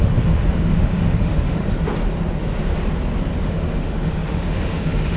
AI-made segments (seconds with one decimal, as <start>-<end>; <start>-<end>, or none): 0.0-1.6; 3.4-5.2